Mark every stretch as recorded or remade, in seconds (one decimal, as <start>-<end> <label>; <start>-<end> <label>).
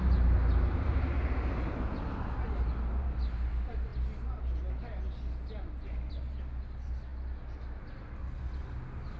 0.0-9.2 recorded